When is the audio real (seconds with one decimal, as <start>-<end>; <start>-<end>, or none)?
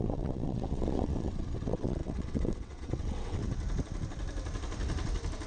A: 3.4-5.5